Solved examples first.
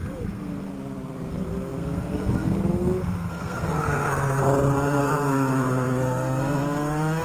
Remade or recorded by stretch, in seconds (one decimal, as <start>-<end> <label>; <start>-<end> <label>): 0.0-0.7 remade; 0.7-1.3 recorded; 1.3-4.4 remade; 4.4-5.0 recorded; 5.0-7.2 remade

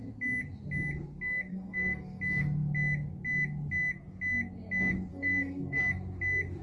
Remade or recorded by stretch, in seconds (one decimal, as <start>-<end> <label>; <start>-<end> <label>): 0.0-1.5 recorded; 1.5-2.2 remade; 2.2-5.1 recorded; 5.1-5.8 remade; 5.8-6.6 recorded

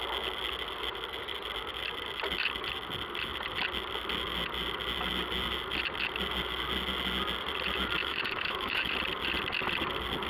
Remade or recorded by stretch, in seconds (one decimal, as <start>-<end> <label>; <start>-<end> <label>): 0.0-8.0 recorded; 8.0-8.9 remade; 8.9-10.3 recorded

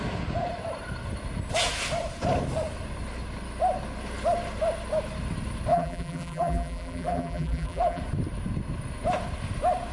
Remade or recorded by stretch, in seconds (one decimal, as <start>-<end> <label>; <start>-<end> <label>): 0.0-5.7 recorded; 5.7-8.0 remade; 8.0-9.9 recorded